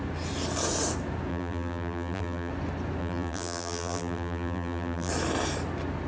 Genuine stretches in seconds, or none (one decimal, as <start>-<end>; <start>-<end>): 0.0-1.3; 2.5-3.0; 5.1-6.1